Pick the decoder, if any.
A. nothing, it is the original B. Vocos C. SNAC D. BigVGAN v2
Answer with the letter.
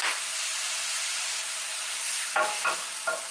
A